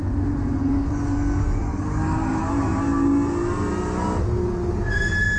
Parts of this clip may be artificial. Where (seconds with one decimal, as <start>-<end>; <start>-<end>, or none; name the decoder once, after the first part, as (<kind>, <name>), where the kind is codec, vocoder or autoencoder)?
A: 0.6-2.5 (codec, DAC)